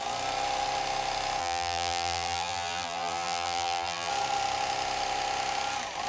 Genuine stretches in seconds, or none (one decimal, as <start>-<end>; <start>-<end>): 0.0-1.4; 4.1-6.1